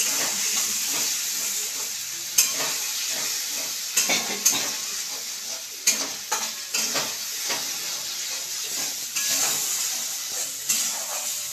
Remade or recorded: recorded